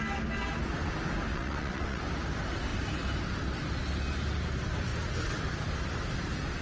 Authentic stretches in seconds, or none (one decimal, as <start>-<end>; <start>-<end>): 0.0-1.3; 2.0-6.6

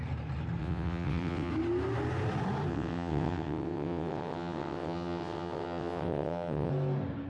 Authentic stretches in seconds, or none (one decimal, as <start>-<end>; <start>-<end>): 0.0-0.6; 1.5-2.7; 6.7-7.3

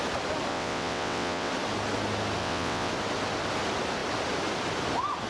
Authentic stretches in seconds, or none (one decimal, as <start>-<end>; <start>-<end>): 0.0-0.5; 1.5-2.4; 2.9-5.3